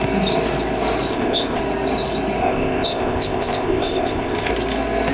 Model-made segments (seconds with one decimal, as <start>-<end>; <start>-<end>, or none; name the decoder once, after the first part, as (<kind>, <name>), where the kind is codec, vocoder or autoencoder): 1.1-1.6 (codec, ZipCodec); 2.4-4.5